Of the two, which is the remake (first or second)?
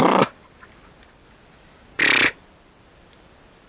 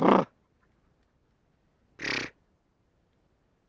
first